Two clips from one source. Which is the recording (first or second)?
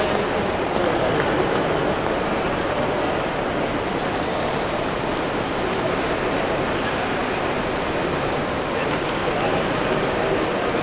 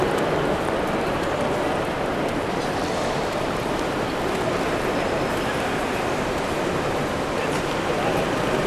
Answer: first